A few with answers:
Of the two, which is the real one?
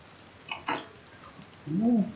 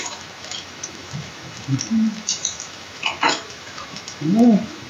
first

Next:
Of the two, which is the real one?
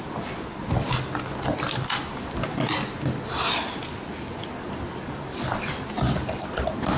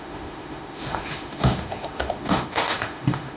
first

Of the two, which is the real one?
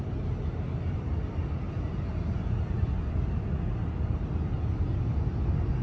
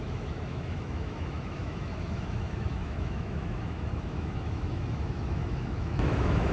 first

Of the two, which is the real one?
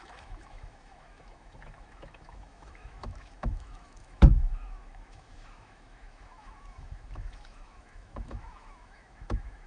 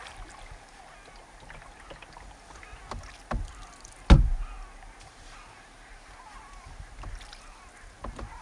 second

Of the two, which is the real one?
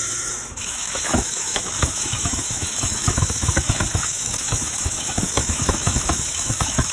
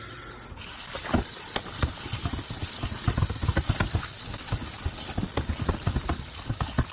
second